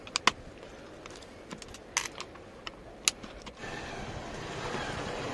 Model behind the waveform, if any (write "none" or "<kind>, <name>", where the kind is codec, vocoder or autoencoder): none